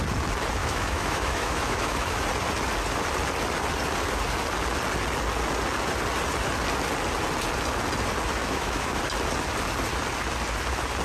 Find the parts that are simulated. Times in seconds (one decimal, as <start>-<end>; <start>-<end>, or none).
0.6-2.2; 8.4-9.0

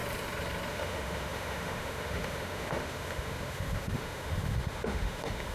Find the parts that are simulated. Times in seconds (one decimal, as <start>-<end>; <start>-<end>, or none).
0.7-5.5

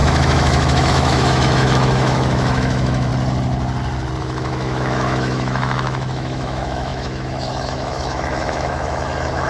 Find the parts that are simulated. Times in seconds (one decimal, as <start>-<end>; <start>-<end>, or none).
0.0-3.1; 4.2-9.5

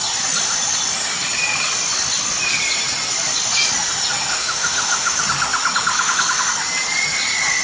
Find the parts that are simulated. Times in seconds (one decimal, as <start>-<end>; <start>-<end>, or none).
4.3-5.2; 5.9-6.5

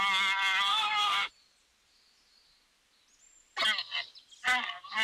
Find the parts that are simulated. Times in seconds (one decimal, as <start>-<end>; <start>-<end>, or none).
0.7-1.3

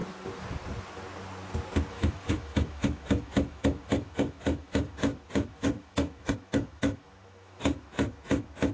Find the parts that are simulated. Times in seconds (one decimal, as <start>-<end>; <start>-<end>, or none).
1.9-8.7

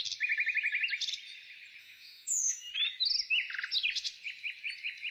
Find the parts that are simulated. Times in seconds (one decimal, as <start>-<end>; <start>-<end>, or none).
1.8-2.7